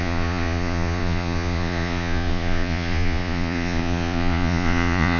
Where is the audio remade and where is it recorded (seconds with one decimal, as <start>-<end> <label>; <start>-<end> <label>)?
0.0-5.2 remade